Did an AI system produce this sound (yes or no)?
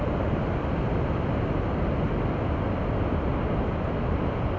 no